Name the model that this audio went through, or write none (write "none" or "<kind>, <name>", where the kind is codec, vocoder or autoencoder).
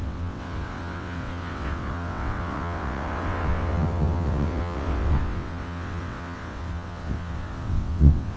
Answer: vocoder, WaveNeXt